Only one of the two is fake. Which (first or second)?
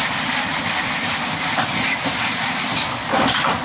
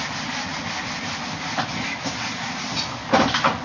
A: first